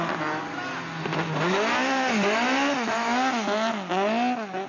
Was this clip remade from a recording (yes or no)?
no